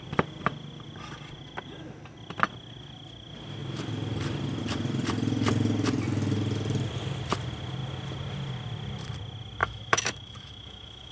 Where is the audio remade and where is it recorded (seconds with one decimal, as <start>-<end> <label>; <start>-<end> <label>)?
0.0-9.6 recorded; 9.6-11.1 remade